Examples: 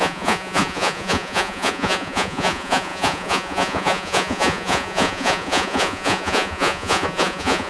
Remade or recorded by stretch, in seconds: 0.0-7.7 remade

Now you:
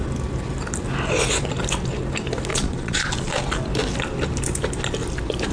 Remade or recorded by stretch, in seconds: 0.0-2.5 recorded; 2.5-3.1 remade; 3.1-5.5 recorded

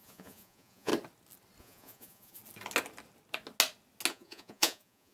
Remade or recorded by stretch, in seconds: 0.0-0.9 remade; 0.9-1.6 recorded; 1.6-2.4 remade; 2.4-4.1 recorded; 4.1-5.1 remade